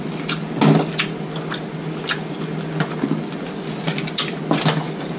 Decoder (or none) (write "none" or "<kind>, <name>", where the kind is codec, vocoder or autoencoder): none